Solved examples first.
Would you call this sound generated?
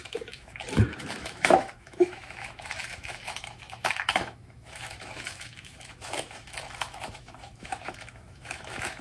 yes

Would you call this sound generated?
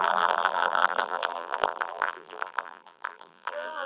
yes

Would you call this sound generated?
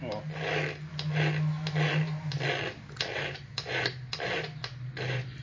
no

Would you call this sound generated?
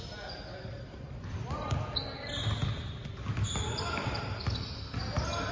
no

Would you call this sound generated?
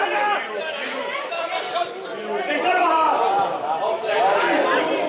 yes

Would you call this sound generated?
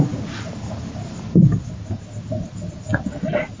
no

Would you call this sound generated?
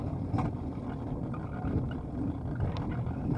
no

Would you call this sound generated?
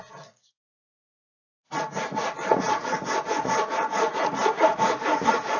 yes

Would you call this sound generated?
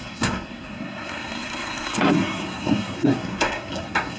yes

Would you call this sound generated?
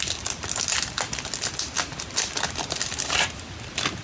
no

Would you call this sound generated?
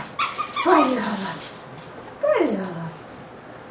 no